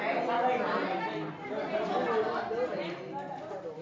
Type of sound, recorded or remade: recorded